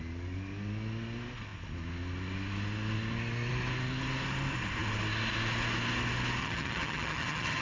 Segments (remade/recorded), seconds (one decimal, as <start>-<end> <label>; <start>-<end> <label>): 0.0-6.4 recorded; 6.4-7.6 remade